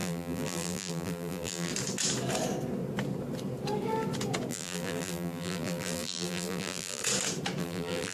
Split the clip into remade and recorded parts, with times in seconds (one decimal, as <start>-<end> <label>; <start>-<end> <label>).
0.0-1.7 remade; 1.7-4.5 recorded; 4.5-7.0 remade; 7.0-7.6 recorded; 7.6-8.1 remade